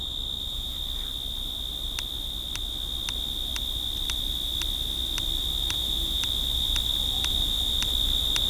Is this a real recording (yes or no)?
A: yes